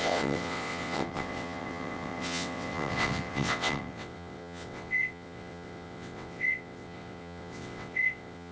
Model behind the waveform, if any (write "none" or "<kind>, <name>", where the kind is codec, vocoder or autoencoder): vocoder, WaveNeXt